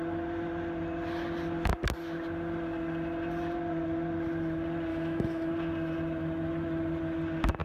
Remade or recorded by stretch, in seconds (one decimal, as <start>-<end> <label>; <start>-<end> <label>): 0.0-4.9 recorded; 4.9-5.5 remade; 5.5-7.6 recorded